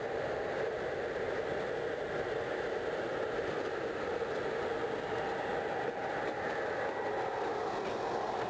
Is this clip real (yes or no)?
yes